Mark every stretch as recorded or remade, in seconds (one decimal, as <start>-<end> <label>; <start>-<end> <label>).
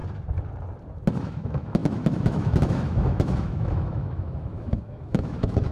0.0-1.2 recorded; 1.2-5.7 remade